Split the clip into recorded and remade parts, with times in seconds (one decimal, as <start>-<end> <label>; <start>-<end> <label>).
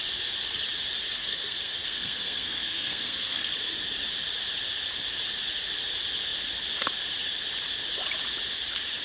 0.0-1.2 recorded; 1.2-3.5 remade; 3.5-9.0 recorded